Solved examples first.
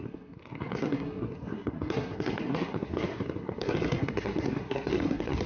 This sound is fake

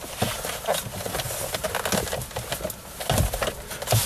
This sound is real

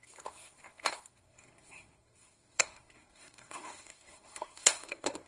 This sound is fake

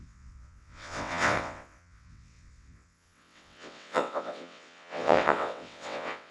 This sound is fake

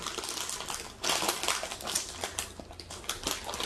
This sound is real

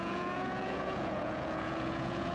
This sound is fake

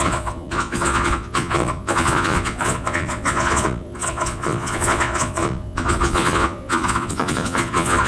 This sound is fake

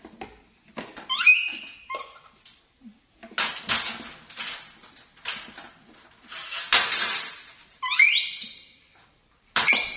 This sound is real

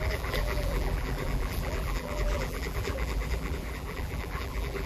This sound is fake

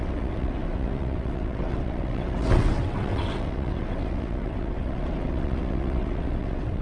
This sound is fake